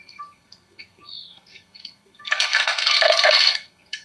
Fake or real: fake